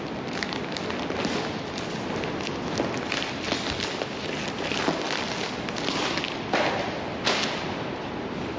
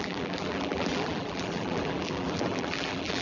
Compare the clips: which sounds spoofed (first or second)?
second